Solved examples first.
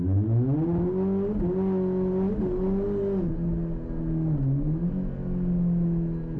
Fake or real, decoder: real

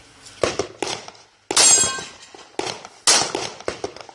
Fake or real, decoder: real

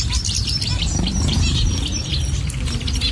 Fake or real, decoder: fake, vocoder, BigVGAN v2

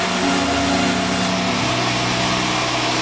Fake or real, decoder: real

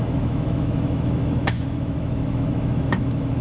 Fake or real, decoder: fake, autoencoder, DAC-VAE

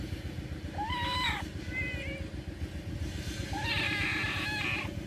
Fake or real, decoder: real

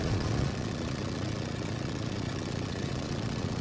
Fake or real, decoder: fake, vocoder, Vocos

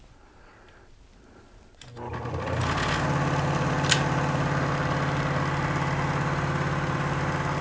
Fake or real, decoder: real